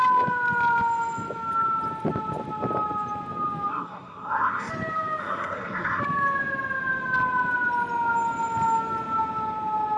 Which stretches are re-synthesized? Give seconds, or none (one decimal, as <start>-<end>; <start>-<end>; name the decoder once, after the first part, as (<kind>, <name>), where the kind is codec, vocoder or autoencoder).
3.7-4.7 (codec, SNAC); 5.2-6.0